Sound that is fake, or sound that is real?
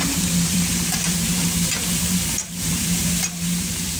fake